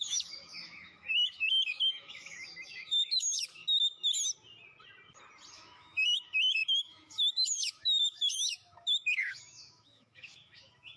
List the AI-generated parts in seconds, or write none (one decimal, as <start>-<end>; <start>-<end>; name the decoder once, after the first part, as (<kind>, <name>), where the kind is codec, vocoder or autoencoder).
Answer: 0.0-3.6 (autoencoder, DAC-VAE); 5.5-11.0